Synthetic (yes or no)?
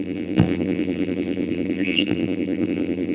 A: yes